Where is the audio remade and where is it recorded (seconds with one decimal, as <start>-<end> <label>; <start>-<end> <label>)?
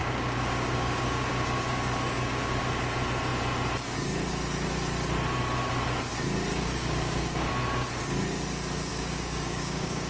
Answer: 0.0-2.6 remade; 2.6-6.5 recorded; 6.5-7.5 remade; 7.5-8.9 recorded; 8.9-10.1 remade